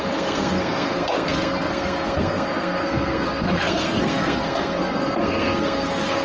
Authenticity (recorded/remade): remade